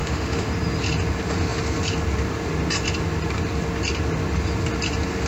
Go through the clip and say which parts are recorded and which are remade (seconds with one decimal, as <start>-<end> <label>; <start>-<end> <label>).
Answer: 0.0-0.5 remade; 0.5-5.3 recorded